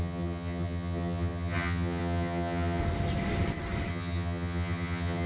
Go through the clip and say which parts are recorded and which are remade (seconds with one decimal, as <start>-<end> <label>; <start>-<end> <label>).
0.0-2.8 remade; 2.8-3.9 recorded; 3.9-5.3 remade